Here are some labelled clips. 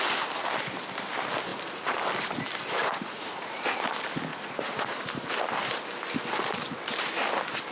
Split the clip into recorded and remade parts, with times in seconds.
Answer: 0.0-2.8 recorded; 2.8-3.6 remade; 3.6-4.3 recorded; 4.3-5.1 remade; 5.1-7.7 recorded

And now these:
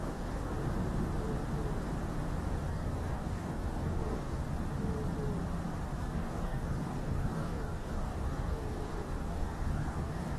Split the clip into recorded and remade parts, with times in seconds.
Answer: 0.0-0.5 remade; 0.5-2.7 recorded; 2.7-4.4 remade; 4.4-6.0 recorded; 6.0-10.4 remade

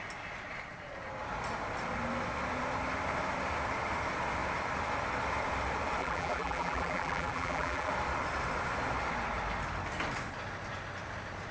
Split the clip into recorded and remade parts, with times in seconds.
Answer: 0.0-6.0 recorded; 6.0-7.9 remade; 7.9-11.5 recorded

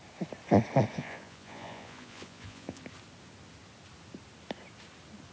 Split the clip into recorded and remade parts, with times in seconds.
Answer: 0.0-0.9 recorded; 0.9-2.8 remade; 2.8-5.3 recorded

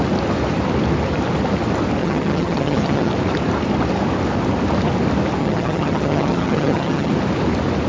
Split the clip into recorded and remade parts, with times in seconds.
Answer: 0.0-2.0 recorded; 2.0-3.1 remade; 3.1-5.4 recorded; 5.4-7.1 remade; 7.1-7.9 recorded

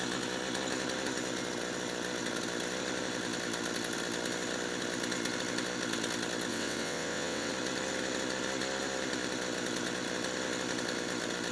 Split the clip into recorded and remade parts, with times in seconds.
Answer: 0.0-6.5 recorded; 6.5-7.5 remade; 7.5-11.5 recorded

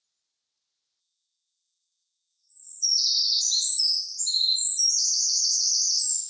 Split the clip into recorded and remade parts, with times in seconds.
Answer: 0.0-1.0 recorded; 1.0-3.8 remade; 3.8-6.3 recorded

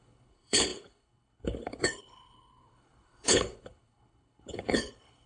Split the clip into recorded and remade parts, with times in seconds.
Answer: 0.0-5.3 remade